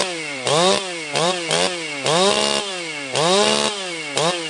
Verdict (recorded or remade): remade